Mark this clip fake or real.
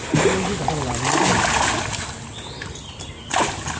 real